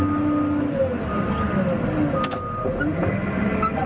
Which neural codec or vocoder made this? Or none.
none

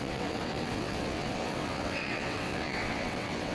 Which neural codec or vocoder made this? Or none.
vocoder, WaveNeXt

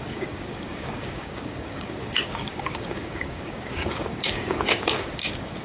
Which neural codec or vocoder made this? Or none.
codec, DAC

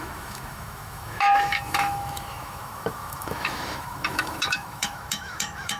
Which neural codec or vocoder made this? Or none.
autoencoder, DAC-VAE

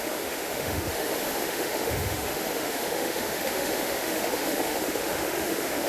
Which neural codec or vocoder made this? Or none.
autoencoder, DAC-VAE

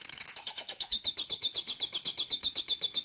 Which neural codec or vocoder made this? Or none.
autoencoder, DAC-VAE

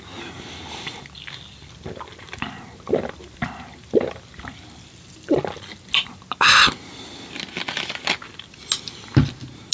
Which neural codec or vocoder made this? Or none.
none